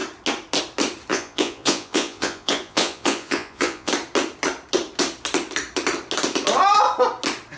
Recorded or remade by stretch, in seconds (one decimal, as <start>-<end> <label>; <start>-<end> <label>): 0.0-1.1 recorded; 1.1-3.9 remade; 3.9-7.6 recorded

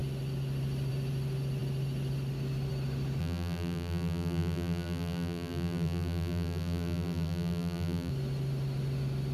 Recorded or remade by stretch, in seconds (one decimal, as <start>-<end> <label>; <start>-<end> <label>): 0.0-3.2 recorded; 3.2-8.1 remade; 8.1-9.3 recorded

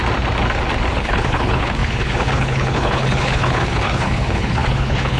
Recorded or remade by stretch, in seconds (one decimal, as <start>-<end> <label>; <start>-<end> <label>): 0.0-0.9 recorded; 0.9-5.2 remade